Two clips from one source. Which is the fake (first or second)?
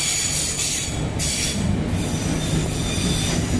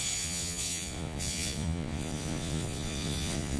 second